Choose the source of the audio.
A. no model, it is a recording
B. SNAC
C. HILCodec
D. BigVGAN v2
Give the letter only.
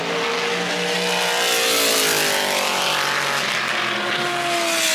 A